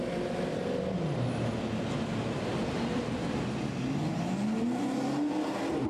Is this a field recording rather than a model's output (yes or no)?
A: yes